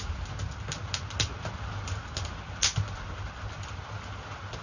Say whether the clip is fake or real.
real